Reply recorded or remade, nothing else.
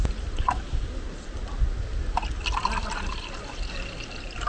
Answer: recorded